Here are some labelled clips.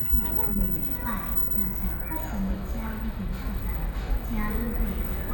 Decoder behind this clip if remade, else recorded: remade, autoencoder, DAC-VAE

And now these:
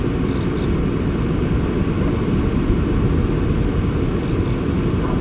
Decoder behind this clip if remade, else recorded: recorded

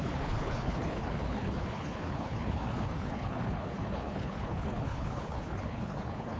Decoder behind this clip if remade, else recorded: remade, codec, HILCodec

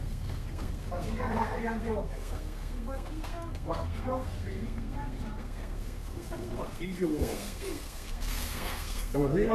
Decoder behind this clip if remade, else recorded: remade, codec, SNAC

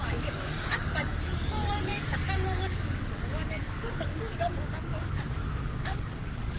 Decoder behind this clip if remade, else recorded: remade, codec, DAC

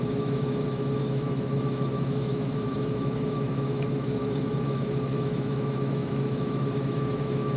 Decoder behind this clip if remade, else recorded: remade, autoencoder, DAC-VAE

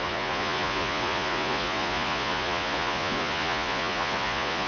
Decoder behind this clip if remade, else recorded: remade, vocoder, Vocos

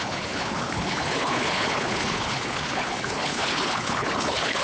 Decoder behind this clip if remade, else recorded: remade, codec, HILCodec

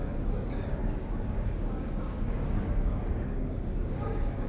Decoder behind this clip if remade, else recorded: remade, codec, DAC